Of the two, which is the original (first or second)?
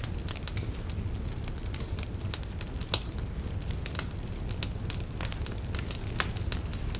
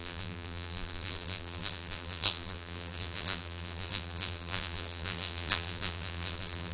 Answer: first